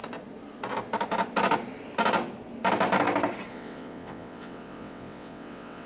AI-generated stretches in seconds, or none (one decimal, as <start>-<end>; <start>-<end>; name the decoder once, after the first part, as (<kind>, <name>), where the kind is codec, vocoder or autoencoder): 3.5-5.9 (vocoder, WaveNeXt)